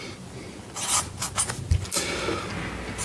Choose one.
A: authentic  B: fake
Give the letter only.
A